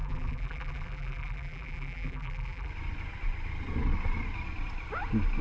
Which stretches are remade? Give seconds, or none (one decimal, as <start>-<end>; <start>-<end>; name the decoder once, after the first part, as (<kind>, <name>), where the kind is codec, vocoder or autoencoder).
0.0-2.7 (vocoder, BigVGAN v2)